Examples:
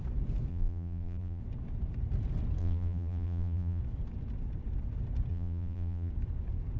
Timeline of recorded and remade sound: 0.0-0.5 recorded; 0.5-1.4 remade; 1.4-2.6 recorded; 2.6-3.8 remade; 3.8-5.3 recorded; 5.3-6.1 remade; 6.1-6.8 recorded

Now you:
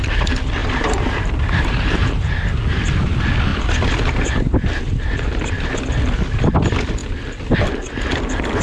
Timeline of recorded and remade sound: 0.0-0.6 recorded; 0.6-2.1 remade; 2.1-8.6 recorded